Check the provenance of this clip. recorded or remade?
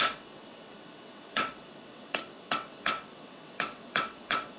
remade